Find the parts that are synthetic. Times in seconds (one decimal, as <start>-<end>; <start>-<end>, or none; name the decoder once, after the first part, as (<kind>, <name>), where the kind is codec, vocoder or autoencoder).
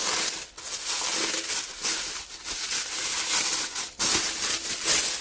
none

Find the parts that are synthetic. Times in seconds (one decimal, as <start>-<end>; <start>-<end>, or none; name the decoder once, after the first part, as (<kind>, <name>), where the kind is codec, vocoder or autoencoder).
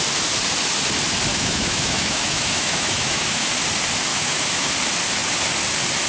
1.3-3.5 (autoencoder, DAC-VAE); 4.1-4.7